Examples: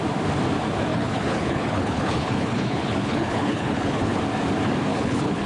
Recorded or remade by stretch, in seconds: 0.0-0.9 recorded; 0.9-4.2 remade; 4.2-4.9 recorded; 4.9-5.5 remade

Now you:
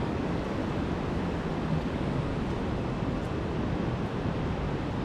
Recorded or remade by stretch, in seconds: 0.0-0.6 remade; 0.6-1.8 recorded; 1.8-2.3 remade; 2.3-5.0 recorded